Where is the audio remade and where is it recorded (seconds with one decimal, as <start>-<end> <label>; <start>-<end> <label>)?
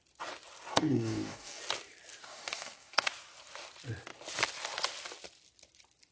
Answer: 0.0-0.7 recorded; 0.7-1.6 remade; 1.6-2.2 recorded; 2.2-3.1 remade; 3.1-6.1 recorded